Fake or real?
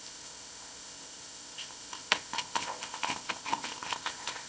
fake